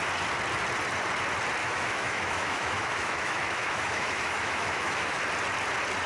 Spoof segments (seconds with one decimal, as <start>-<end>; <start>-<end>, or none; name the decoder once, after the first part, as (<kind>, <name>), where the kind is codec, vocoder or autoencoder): 1.6-5.2 (autoencoder, DAC-VAE)